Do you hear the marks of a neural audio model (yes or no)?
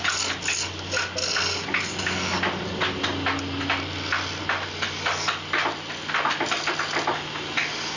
no